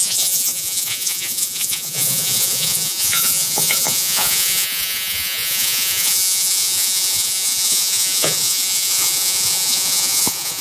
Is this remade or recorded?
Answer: remade